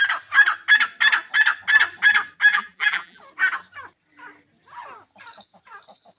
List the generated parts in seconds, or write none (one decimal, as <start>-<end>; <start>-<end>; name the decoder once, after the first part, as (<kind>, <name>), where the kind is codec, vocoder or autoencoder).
2.5-3.2 (vocoder, BigVGAN v2)